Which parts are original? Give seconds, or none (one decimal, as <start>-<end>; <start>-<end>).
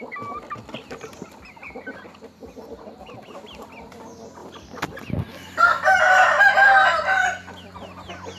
0.0-8.4